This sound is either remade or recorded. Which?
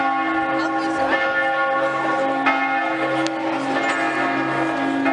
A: recorded